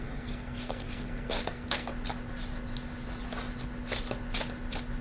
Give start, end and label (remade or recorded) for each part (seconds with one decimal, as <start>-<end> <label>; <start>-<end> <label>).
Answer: 0.0-1.9 remade; 1.9-5.0 recorded

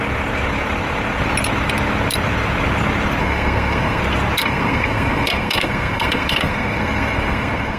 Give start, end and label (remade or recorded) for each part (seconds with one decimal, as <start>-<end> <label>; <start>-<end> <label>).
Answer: 0.0-3.2 recorded; 3.2-4.0 remade; 4.0-4.4 recorded; 4.4-7.8 remade

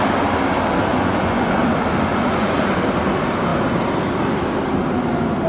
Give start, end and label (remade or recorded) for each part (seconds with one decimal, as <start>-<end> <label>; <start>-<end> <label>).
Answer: 0.0-0.9 recorded; 0.9-1.6 remade; 1.6-2.1 recorded; 2.1-2.7 remade; 2.7-5.5 recorded

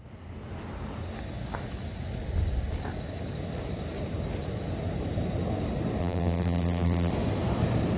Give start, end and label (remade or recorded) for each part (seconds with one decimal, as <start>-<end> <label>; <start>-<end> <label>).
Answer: 0.0-6.0 recorded; 6.0-7.1 remade; 7.1-8.0 recorded

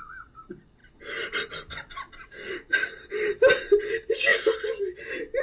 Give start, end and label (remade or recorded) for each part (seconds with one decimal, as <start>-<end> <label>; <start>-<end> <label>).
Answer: 0.0-5.4 recorded

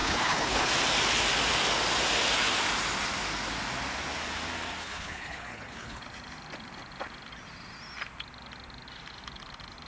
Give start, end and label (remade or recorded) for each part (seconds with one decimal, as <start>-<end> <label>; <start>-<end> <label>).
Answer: 0.0-0.7 remade; 0.7-4.8 recorded; 4.8-6.0 remade; 6.0-9.9 recorded